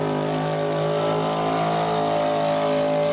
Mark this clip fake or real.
real